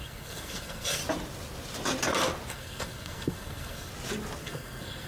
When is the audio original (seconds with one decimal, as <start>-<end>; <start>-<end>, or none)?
1.0-2.5; 3.9-4.4